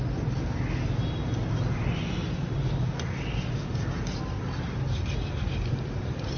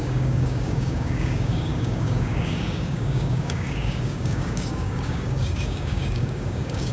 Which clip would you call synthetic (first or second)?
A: second